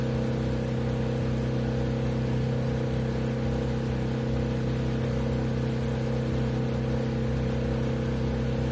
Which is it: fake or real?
real